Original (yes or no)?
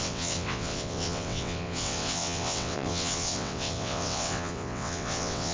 no